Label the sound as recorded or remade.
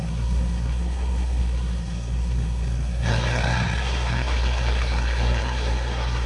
remade